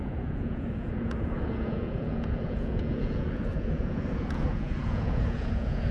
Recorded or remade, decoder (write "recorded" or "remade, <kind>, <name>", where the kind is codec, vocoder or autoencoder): remade, vocoder, Vocos